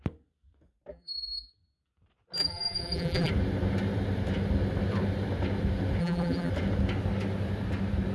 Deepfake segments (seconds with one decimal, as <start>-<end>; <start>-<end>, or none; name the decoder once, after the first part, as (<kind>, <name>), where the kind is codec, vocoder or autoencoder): 0.9-1.5 (vocoder, BigVGAN v2); 2.4-3.3; 6.0-6.5